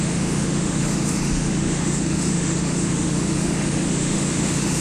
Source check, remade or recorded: remade